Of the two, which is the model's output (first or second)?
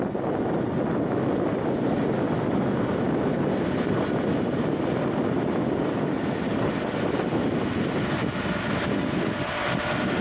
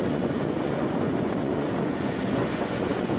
second